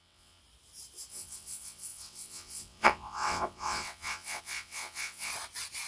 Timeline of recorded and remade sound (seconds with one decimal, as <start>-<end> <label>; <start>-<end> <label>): 0.0-0.4 remade; 0.4-1.1 recorded; 1.1-5.3 remade; 5.3-5.9 recorded